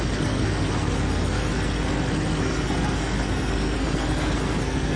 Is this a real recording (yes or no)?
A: no